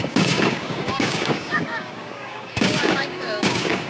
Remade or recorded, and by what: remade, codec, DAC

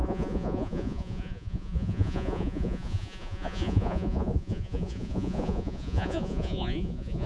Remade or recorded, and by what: remade, vocoder, Vocos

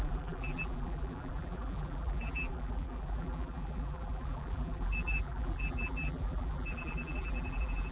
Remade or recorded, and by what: remade, vocoder, BigVGAN v2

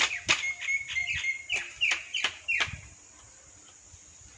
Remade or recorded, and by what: recorded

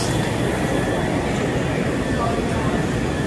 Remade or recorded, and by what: recorded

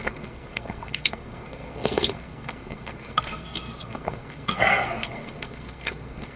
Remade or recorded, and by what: remade, codec, SNAC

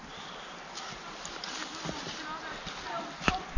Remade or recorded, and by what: recorded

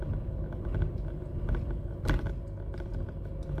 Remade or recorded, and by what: recorded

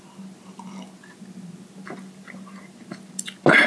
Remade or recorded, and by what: recorded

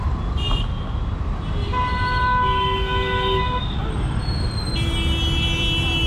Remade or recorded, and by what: recorded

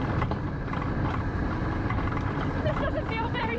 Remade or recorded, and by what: remade, vocoder, BigVGAN v2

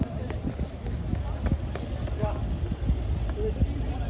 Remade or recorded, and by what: recorded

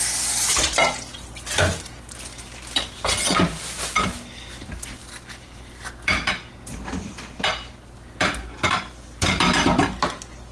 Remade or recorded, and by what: recorded